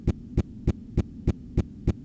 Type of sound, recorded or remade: recorded